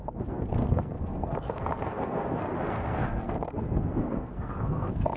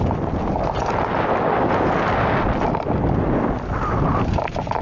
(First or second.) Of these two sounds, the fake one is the first